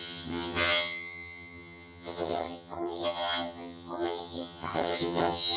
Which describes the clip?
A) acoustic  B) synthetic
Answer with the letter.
B